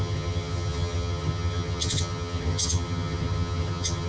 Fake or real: fake